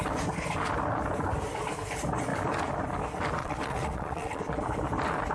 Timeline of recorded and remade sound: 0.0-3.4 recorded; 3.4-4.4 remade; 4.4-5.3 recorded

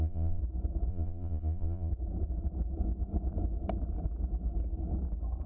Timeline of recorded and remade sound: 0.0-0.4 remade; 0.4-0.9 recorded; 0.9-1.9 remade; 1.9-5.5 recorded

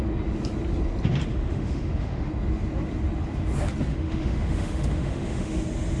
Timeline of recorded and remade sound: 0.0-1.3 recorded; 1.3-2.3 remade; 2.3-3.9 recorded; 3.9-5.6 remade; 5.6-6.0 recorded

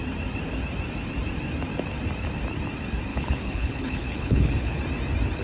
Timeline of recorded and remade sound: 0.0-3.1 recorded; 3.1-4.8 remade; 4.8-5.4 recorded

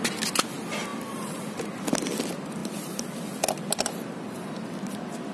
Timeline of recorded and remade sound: 0.0-5.3 recorded

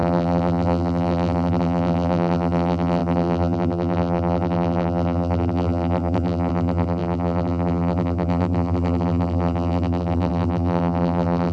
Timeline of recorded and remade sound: 0.0-11.5 remade